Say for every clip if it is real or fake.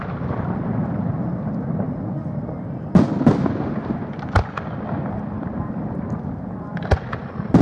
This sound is real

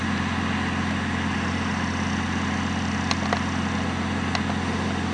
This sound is real